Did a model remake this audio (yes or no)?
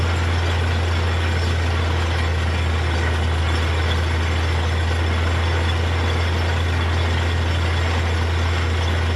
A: no